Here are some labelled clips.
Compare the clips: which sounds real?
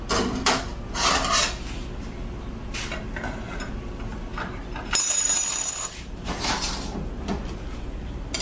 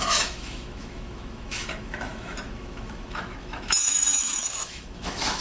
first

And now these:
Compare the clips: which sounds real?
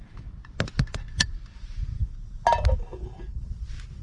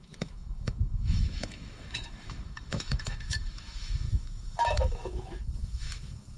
first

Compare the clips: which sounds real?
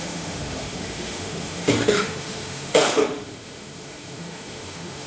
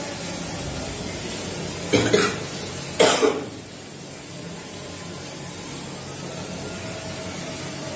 second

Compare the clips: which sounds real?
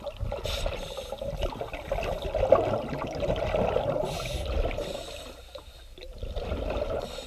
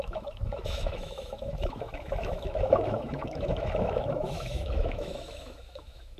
first